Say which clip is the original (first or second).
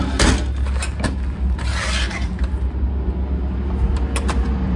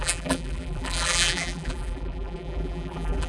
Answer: first